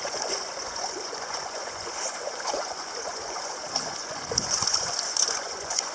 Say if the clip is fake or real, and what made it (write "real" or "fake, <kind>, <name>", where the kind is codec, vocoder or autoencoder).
fake, vocoder, Vocos